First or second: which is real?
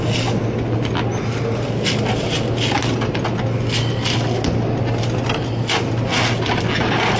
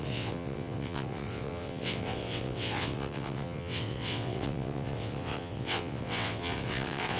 first